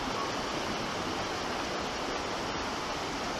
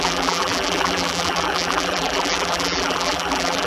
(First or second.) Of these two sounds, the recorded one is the first